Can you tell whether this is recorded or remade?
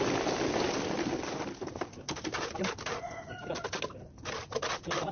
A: recorded